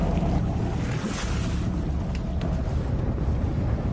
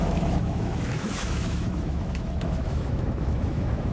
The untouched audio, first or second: first